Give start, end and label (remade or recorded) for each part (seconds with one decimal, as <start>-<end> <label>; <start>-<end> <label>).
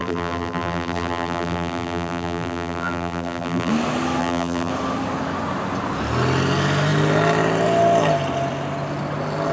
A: 0.0-3.7 remade; 3.7-4.2 recorded; 4.2-4.7 remade; 4.7-9.5 recorded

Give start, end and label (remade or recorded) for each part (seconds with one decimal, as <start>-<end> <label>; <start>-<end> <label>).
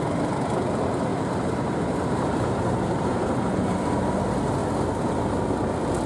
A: 0.0-1.1 recorded; 1.1-4.1 remade; 4.1-6.1 recorded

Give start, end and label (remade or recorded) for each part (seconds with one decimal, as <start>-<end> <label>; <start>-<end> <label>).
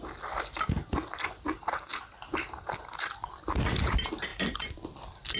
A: 0.0-1.9 recorded; 1.9-3.3 remade; 3.3-4.3 recorded; 4.3-5.4 remade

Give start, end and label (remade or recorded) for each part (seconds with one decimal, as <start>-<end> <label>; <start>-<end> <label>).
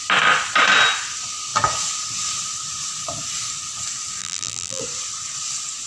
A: 0.0-4.2 recorded; 4.2-4.8 remade; 4.8-5.9 recorded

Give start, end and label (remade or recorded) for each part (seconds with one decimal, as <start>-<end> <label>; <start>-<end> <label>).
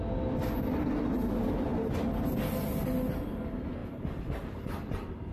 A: 0.0-3.8 recorded; 3.8-5.3 remade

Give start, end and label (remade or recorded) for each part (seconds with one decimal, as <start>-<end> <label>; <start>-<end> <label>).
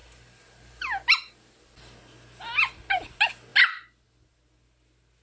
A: 0.0-5.2 recorded